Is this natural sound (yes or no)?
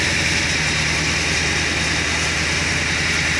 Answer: yes